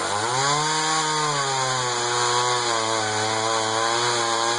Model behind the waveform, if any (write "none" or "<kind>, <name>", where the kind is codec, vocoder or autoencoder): none